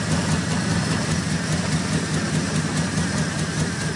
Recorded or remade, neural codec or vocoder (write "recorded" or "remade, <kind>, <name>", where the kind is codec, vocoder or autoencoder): recorded